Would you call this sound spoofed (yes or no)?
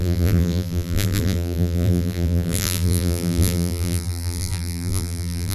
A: yes